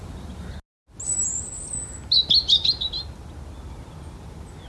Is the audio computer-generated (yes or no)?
no